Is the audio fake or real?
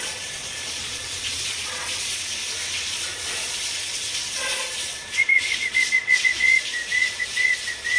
fake